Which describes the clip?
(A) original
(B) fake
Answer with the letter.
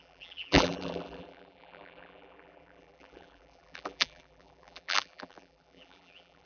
B